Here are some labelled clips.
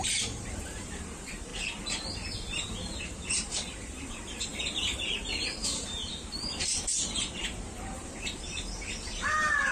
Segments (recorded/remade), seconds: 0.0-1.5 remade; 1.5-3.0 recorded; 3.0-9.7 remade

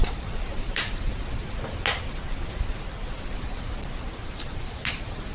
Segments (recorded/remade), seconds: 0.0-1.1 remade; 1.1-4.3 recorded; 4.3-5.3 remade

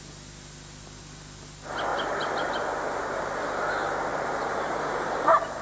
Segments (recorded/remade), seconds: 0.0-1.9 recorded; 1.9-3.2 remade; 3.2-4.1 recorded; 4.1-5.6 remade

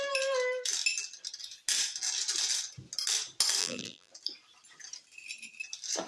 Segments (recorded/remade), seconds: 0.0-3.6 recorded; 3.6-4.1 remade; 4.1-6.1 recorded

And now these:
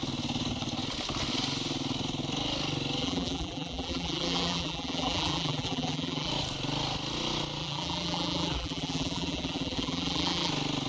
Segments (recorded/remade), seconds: 0.0-3.0 recorded; 3.0-6.3 remade; 6.3-7.6 recorded; 7.6-10.5 remade; 10.5-10.9 recorded

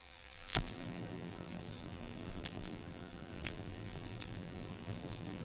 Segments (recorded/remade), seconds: 0.0-5.4 remade

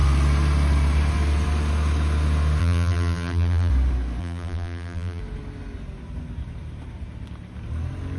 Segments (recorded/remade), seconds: 0.0-2.6 recorded; 2.6-3.7 remade; 3.7-4.2 recorded; 4.2-5.2 remade; 5.2-8.2 recorded